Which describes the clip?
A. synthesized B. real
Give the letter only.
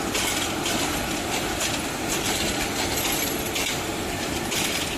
B